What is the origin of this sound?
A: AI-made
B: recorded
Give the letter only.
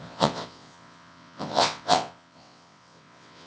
A